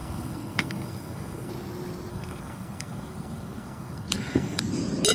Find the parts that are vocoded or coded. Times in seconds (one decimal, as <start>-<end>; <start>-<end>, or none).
0.0-1.5; 2.1-4.6